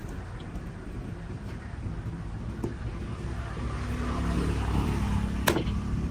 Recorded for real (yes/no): yes